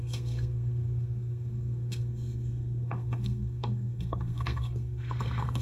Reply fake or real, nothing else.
fake